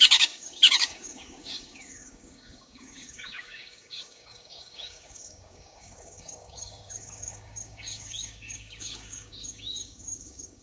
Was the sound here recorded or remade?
remade